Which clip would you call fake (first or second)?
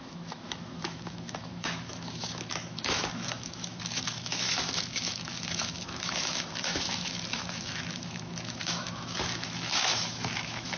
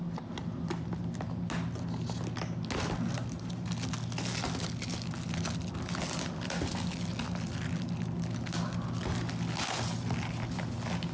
first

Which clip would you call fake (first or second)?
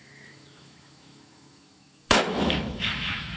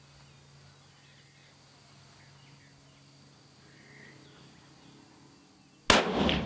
first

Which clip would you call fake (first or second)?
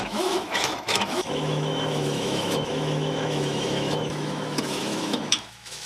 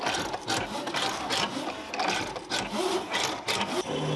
first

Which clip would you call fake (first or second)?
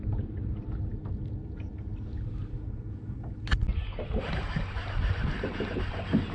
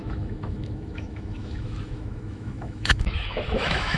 second